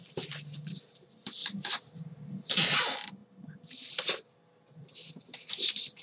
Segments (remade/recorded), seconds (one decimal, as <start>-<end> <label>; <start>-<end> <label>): 0.0-3.2 remade; 3.2-5.1 recorded; 5.1-6.0 remade